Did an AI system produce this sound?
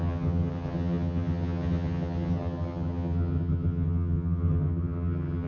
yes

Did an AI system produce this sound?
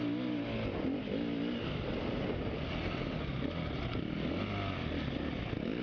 no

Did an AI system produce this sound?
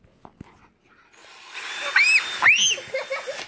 no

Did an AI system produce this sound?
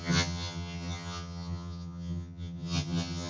yes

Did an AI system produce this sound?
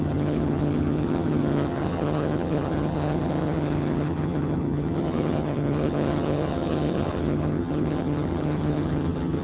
yes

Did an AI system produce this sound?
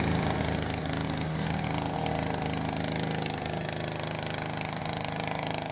no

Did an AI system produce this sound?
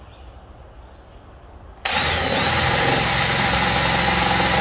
no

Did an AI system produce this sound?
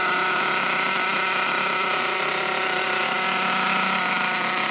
no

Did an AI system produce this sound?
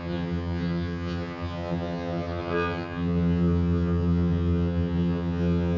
yes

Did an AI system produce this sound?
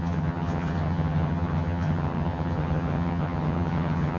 yes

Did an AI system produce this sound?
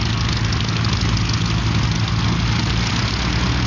no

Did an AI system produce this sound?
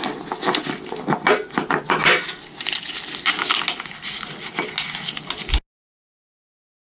no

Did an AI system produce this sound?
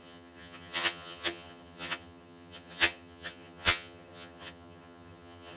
yes